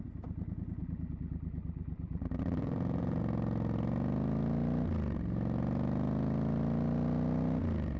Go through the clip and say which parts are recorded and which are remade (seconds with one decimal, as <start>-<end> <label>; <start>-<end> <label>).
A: 0.0-0.8 recorded; 0.8-3.2 remade; 3.2-8.0 recorded